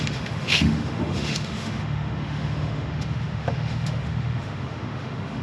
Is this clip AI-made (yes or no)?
yes